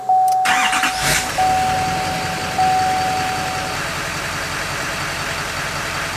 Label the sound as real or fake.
real